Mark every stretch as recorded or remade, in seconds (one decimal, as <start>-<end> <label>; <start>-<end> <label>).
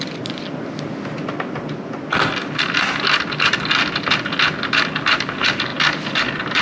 0.0-6.6 recorded